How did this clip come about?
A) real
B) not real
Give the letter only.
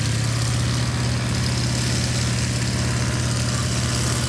A